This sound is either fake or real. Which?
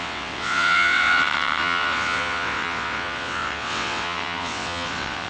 fake